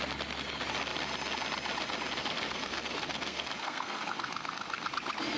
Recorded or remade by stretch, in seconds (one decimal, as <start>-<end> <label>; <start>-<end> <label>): 0.0-2.2 recorded; 2.2-4.9 remade; 4.9-5.4 recorded